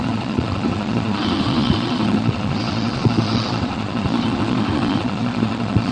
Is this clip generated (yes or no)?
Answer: yes